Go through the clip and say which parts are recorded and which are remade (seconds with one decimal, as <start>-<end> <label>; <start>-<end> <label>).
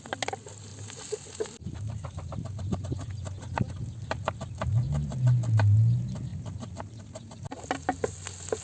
0.0-8.6 recorded